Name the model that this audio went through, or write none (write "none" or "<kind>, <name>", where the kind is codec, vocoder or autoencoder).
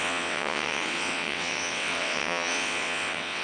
vocoder, WaveNeXt